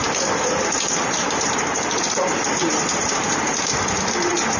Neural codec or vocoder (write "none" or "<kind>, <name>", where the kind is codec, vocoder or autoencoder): vocoder, BigVGAN v2